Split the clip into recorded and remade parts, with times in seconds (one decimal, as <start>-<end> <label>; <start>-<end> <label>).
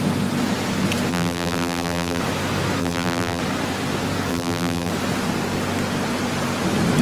0.0-1.1 recorded; 1.1-2.2 remade; 2.2-2.8 recorded; 2.8-3.4 remade; 3.4-4.3 recorded; 4.3-4.9 remade; 4.9-7.0 recorded